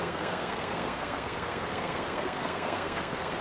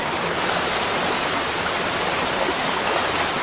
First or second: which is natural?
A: second